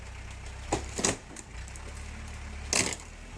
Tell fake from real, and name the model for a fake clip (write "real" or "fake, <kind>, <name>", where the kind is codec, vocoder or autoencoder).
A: real